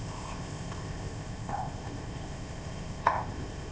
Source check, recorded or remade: remade